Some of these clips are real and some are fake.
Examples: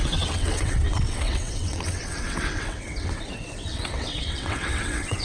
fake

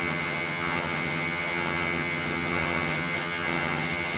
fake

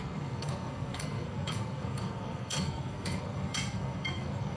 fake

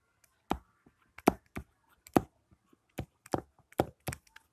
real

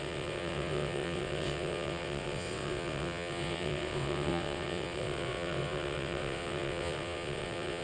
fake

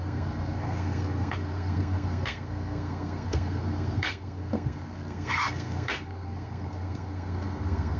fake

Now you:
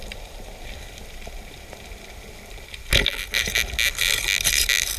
real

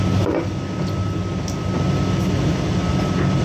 real